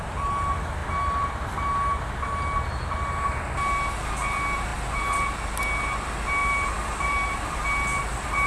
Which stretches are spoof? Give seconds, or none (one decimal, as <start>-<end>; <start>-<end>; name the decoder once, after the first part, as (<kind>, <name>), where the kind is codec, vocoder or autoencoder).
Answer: 6.4-7.5 (vocoder, BigVGAN v2)